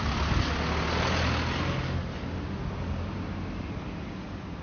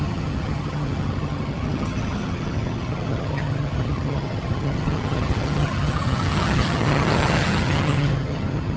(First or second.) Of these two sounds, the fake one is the second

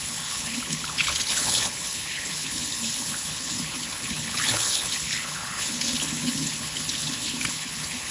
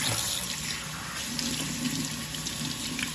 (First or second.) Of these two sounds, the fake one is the first